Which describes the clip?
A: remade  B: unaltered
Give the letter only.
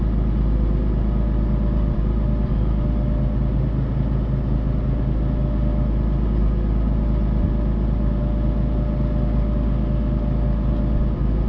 B